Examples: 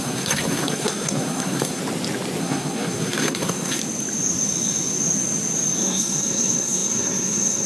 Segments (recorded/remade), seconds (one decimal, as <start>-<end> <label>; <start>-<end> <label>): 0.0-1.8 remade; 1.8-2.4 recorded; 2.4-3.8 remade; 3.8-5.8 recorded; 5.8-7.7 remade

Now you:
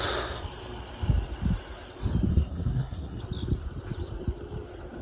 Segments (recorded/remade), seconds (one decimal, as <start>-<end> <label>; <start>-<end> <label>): 0.0-2.3 recorded; 2.3-3.2 remade; 3.2-5.0 recorded

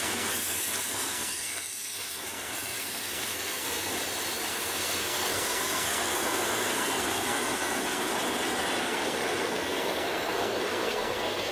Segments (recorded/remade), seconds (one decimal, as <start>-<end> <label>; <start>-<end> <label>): 0.0-3.9 remade; 3.9-4.5 recorded; 4.5-8.1 remade; 8.1-8.8 recorded; 8.8-11.5 remade